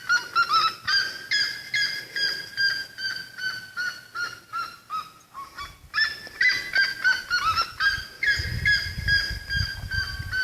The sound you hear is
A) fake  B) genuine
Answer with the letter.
B